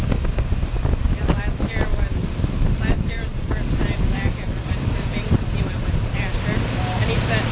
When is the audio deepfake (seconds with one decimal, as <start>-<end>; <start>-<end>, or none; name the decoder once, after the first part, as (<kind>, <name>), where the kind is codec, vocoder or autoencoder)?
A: 1.9-5.2 (vocoder, BigVGAN v2)